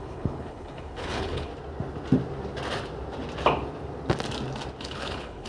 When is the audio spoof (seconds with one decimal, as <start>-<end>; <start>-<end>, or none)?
0.0-1.5; 4.8-5.5